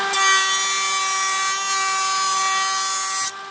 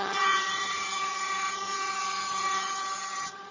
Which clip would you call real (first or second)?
first